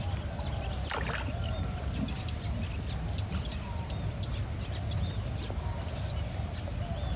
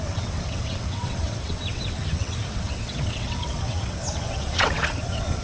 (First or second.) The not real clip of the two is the second